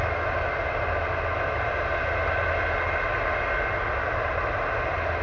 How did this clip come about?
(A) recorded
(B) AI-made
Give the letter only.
A